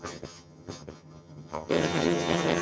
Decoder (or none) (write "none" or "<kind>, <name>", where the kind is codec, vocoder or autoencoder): vocoder, HiFi-GAN